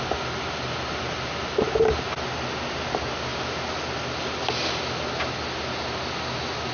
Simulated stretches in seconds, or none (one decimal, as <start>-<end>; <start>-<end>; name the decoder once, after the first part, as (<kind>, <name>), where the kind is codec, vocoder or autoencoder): none